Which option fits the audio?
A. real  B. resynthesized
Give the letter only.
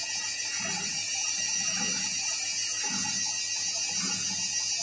B